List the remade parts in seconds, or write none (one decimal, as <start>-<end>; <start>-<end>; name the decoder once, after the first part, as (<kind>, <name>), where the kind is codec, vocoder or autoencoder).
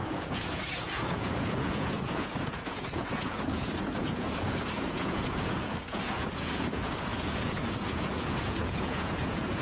0.0-9.6 (vocoder, Vocos)